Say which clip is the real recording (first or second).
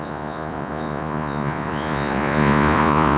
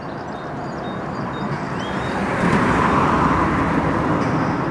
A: second